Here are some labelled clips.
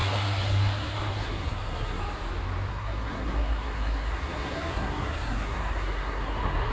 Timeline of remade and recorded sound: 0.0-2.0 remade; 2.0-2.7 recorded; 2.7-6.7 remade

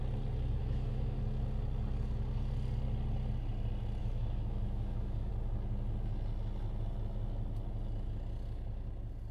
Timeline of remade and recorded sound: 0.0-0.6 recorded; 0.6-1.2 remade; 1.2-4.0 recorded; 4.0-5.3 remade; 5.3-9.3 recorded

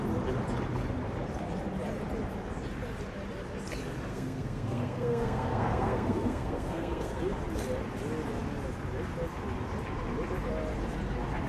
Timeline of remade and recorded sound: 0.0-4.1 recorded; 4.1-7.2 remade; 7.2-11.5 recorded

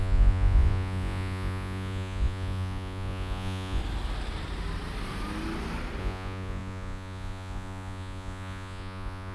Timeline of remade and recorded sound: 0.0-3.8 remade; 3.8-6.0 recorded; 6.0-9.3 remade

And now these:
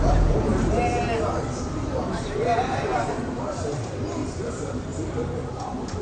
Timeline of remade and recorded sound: 0.0-0.5 remade; 0.5-1.7 recorded; 1.7-2.9 remade; 2.9-4.5 recorded; 4.5-4.9 remade; 4.9-5.5 recorded; 5.5-6.0 remade